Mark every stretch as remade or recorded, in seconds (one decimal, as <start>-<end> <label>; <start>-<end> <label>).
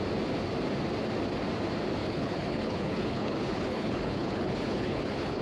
0.0-2.0 recorded; 2.0-5.4 remade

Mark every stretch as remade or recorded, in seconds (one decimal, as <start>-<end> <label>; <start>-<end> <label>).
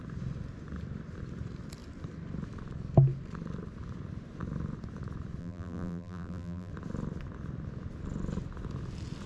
0.0-5.4 recorded; 5.4-6.7 remade; 6.7-9.3 recorded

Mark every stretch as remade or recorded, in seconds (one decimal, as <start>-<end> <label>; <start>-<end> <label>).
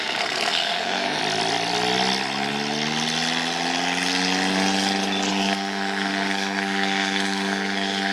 0.0-1.2 remade; 1.2-5.3 recorded; 5.3-8.1 remade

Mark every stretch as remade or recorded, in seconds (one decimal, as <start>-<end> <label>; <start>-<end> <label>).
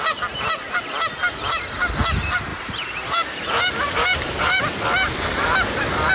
0.0-2.5 recorded; 2.5-4.6 remade; 4.6-6.1 recorded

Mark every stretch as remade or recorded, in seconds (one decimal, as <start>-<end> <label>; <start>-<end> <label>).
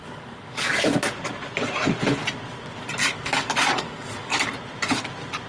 0.0-0.6 remade; 0.6-3.0 recorded; 3.0-4.5 remade; 4.5-5.5 recorded